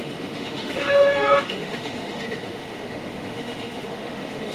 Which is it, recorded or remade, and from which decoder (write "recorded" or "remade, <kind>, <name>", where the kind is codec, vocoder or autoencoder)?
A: remade, autoencoder, DAC-VAE